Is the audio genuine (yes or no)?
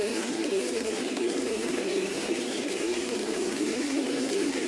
no